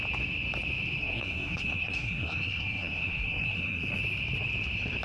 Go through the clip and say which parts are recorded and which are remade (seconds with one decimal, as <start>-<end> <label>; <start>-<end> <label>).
0.0-1.0 recorded; 1.0-4.0 remade; 4.0-5.0 recorded